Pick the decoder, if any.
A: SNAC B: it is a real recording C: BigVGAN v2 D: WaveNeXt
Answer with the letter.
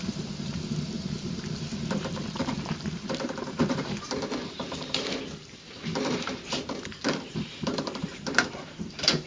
C